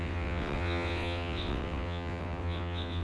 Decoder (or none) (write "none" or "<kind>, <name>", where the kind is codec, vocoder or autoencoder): vocoder, WaveNeXt